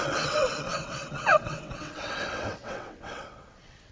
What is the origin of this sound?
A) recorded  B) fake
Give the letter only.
B